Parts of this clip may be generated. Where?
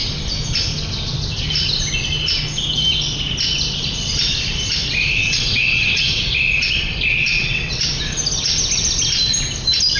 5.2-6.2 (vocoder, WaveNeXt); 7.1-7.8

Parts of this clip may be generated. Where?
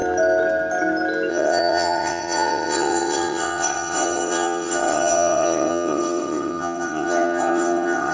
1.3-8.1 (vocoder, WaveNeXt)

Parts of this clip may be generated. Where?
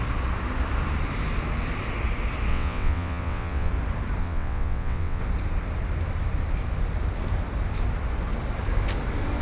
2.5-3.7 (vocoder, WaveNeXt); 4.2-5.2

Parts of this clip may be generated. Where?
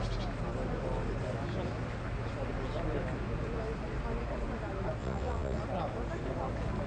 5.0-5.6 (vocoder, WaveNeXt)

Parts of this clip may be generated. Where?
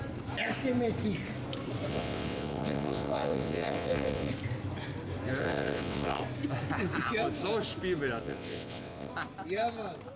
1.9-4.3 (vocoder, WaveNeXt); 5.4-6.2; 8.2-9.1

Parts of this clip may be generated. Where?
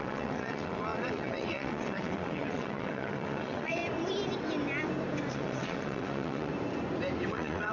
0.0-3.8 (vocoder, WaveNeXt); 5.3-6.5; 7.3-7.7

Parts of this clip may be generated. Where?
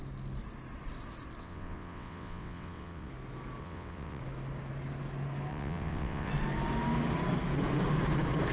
1.4-3.1 (vocoder, WaveNeXt); 3.6-4.2; 5.5-6.3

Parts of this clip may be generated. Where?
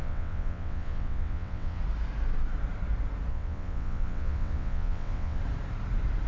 0.0-1.8 (vocoder, WaveNeXt); 3.3-5.4